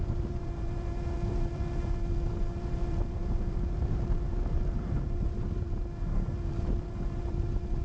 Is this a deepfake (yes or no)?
yes